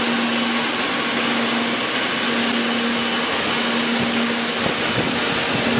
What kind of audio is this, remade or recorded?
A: recorded